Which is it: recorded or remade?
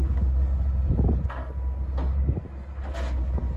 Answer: recorded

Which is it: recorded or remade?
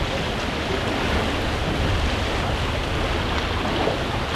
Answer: recorded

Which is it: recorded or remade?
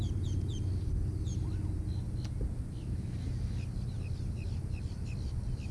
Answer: recorded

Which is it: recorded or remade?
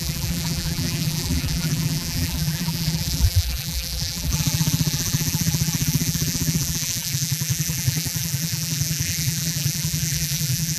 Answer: remade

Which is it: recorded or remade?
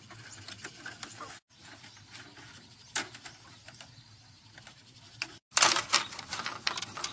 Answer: recorded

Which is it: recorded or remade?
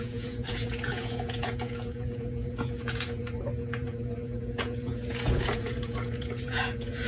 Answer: remade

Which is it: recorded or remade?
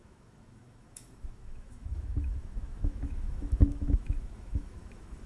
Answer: remade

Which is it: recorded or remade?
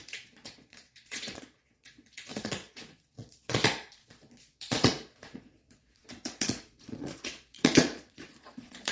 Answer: remade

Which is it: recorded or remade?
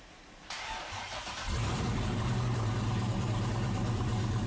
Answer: remade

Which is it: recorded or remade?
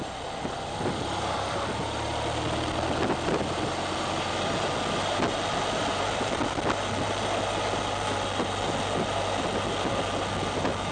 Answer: recorded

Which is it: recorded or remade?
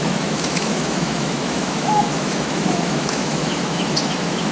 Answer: remade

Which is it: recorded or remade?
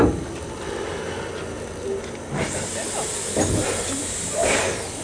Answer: recorded